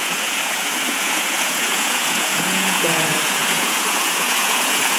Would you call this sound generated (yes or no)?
yes